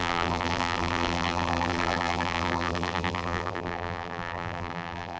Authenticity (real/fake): fake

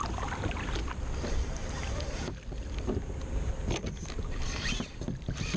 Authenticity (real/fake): fake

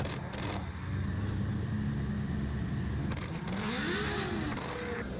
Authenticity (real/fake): real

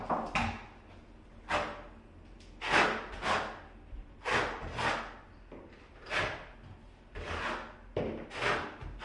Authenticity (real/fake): real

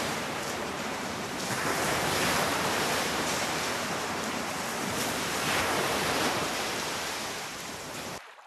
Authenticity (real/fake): fake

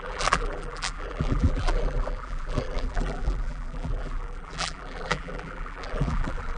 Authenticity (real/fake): fake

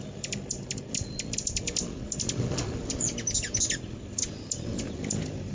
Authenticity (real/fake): real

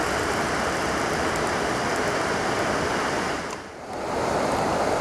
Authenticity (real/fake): fake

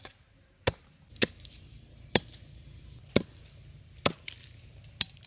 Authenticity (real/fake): real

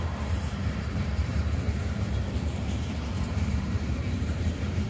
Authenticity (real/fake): fake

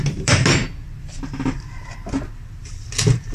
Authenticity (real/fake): fake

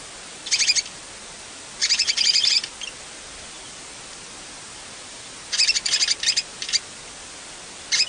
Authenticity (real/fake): real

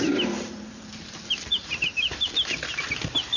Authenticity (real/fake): fake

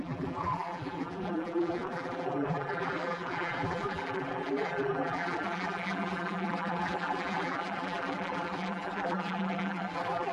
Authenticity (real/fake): fake